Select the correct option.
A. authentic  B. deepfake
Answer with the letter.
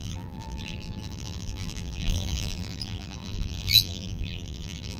B